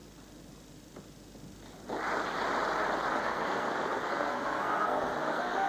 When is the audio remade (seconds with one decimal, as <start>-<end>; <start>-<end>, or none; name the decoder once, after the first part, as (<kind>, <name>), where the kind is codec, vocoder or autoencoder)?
3.1-5.7 (codec, SNAC)

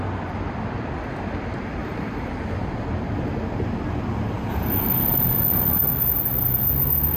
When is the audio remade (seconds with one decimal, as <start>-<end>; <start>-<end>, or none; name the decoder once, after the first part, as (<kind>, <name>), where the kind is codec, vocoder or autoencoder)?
1.8-2.3 (vocoder, BigVGAN v2); 4.5-5.9

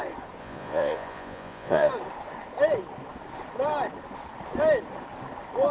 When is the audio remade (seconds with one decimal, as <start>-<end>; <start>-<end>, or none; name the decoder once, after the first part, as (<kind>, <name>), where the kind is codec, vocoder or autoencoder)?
0.4-1.9 (vocoder, Vocos)

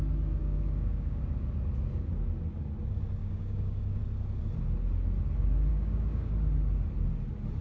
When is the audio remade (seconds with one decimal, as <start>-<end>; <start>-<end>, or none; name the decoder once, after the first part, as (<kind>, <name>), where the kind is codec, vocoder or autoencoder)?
0.4-1.2 (codec, DAC); 3.2-4.0; 5.7-6.3

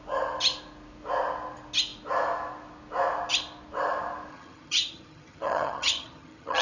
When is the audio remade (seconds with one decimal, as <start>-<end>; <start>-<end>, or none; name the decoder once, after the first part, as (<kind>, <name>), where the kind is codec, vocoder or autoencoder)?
4.3-6.6 (vocoder, HiFi-GAN)

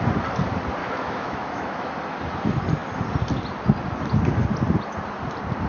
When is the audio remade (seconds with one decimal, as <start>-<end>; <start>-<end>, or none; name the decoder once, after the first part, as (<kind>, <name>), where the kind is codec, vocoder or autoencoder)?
0.8-1.9 (autoencoder, DAC-VAE)

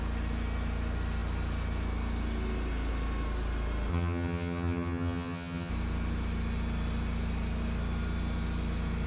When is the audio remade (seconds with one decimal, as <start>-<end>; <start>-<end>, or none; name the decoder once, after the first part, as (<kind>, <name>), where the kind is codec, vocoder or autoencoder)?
3.9-5.7 (vocoder, HiFi-GAN)